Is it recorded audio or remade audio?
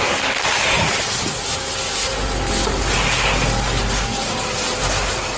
recorded